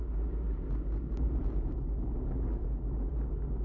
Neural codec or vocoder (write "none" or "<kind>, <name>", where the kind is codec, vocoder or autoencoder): none